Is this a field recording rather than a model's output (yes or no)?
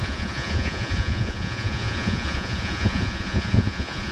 no